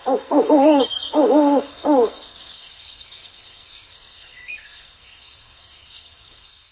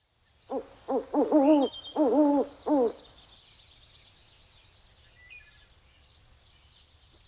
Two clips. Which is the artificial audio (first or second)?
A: first